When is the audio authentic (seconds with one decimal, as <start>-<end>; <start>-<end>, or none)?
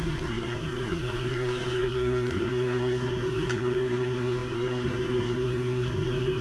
none